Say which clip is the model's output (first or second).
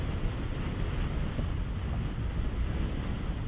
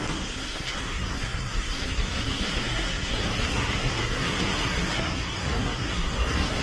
second